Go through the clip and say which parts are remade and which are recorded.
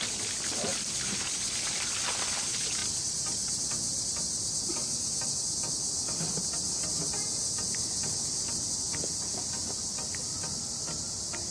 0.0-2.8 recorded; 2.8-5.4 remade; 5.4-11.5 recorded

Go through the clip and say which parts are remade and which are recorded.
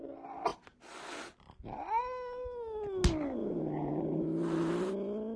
0.0-3.4 recorded; 3.4-4.9 remade; 4.9-5.4 recorded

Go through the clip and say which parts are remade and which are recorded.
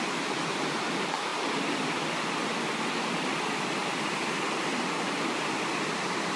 0.0-6.4 recorded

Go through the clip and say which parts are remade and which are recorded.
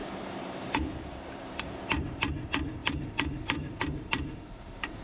0.0-1.8 remade; 1.8-2.8 recorded; 2.8-5.0 remade